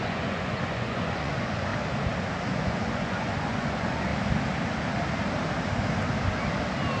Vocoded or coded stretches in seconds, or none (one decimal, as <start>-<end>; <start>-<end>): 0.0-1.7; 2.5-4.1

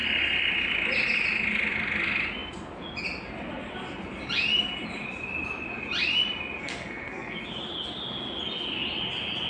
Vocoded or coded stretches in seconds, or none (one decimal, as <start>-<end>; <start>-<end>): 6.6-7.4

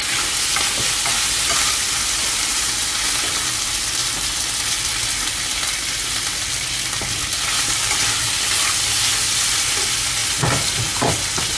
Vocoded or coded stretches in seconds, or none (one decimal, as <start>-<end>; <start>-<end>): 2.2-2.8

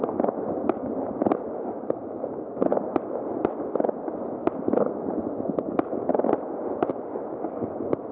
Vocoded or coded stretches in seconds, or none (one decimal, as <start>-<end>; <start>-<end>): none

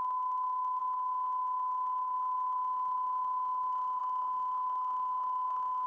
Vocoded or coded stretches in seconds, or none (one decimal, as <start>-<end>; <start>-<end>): 0.0-0.8; 4.0-5.9

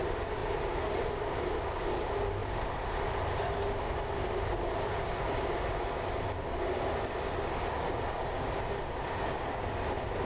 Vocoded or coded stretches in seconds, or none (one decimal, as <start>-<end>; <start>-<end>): 0.4-1.9; 2.4-3.5

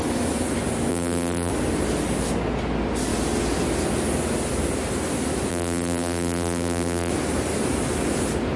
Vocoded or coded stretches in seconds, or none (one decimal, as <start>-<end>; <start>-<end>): 0.9-1.5; 5.5-7.1

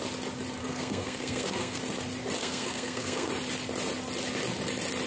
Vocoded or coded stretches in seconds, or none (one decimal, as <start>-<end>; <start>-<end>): 0.6-1.8; 2.4-3.3